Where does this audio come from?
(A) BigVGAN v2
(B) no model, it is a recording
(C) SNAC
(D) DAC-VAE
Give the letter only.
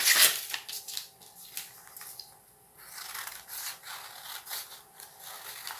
B